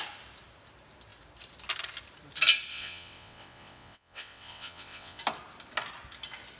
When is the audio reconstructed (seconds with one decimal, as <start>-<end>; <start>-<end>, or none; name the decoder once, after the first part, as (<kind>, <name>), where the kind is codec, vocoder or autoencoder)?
2.7-5.2 (vocoder, WaveNeXt)